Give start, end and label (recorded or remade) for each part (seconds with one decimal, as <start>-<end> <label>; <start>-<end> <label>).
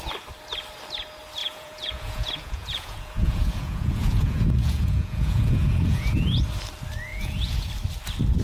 0.0-1.4 recorded; 1.4-6.4 remade; 6.4-7.1 recorded; 7.1-7.7 remade; 7.7-8.4 recorded